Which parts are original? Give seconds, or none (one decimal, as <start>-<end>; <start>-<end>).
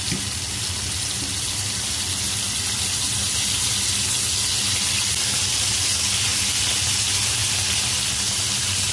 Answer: 0.0-8.9